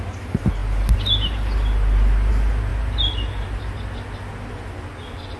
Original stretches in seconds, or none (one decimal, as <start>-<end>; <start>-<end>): 0.0-5.4